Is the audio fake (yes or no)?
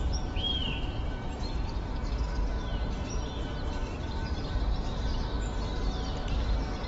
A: yes